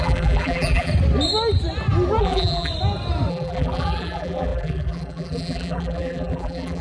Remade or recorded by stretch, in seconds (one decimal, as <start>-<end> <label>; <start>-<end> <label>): 0.0-0.9 remade; 0.9-2.2 recorded; 2.2-2.7 remade; 2.7-3.3 recorded; 3.3-6.8 remade